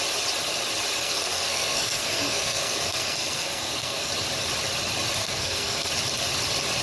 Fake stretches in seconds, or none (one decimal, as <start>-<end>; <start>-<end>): 1.0-4.1; 5.2-5.9